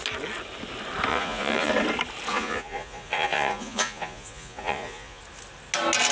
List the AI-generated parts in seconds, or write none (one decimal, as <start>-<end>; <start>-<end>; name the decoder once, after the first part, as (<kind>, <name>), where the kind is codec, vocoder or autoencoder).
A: 1.1-1.7 (vocoder, Vocos); 2.3-5.2